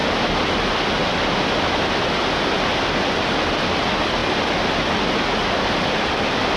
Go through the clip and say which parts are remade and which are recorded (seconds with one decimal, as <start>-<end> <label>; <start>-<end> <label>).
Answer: 0.0-6.6 recorded

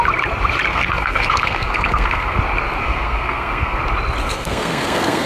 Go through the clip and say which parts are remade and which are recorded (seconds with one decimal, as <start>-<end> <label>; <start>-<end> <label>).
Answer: 0.0-0.7 recorded; 0.7-2.4 remade; 2.4-2.8 recorded; 2.8-3.8 remade; 3.8-4.2 recorded; 4.2-5.3 remade

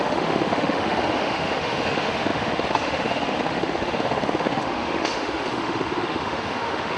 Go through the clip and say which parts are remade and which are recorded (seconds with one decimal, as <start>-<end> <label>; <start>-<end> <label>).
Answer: 0.0-7.0 remade

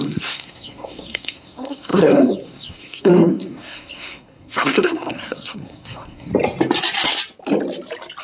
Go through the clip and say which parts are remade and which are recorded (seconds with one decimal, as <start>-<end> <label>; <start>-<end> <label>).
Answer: 0.0-6.3 remade; 6.3-8.2 recorded

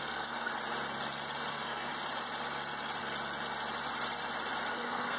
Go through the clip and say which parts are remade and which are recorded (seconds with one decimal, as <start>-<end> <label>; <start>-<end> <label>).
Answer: 0.0-0.5 remade; 0.5-1.5 recorded; 1.5-1.9 remade; 1.9-4.7 recorded; 4.7-5.2 remade

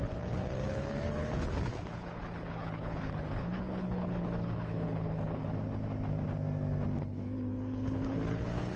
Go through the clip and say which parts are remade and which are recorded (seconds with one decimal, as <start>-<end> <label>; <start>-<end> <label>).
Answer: 0.0-5.4 remade; 5.4-7.0 recorded; 7.0-8.8 remade

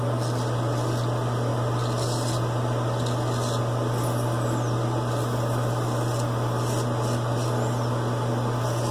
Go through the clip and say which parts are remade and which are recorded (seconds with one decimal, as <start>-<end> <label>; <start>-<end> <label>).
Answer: 0.0-8.9 recorded